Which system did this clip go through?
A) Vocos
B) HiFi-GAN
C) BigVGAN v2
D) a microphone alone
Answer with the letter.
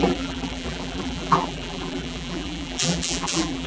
C